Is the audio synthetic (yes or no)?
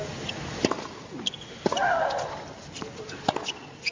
no